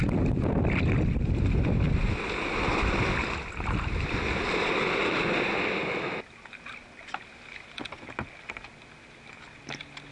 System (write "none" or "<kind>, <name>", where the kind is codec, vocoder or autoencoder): none